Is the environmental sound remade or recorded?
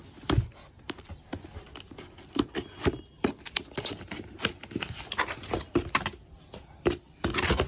recorded